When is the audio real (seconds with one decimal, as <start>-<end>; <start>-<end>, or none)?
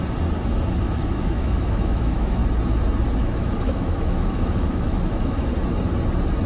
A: 0.0-0.8; 2.4-3.2; 5.5-6.5